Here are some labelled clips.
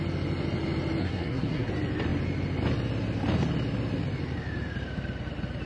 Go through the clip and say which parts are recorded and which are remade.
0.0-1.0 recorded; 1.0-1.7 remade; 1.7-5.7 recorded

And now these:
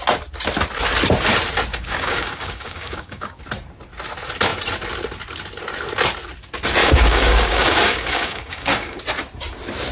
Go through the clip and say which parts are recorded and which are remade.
0.0-1.7 recorded; 1.7-3.4 remade; 3.4-6.8 recorded; 6.8-9.0 remade; 9.0-9.9 recorded